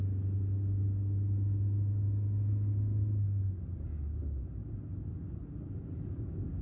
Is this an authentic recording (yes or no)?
yes